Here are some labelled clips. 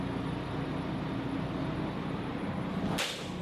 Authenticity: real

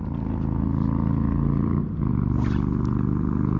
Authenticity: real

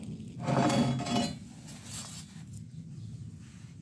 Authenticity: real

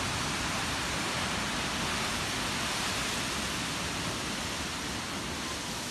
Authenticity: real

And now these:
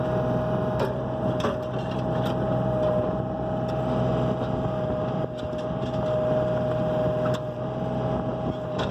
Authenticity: real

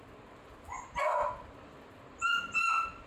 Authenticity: real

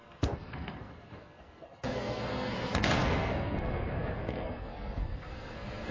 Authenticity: fake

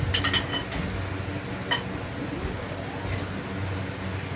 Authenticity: real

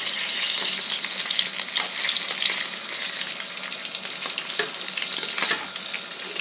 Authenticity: real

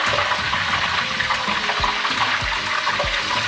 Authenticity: real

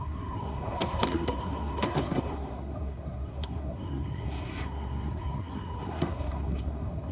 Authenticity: fake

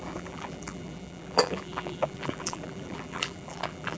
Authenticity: fake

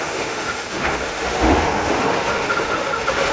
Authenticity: fake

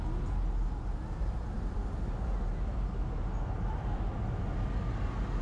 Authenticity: real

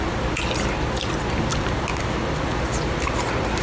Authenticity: real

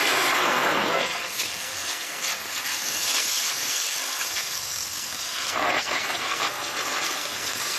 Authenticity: fake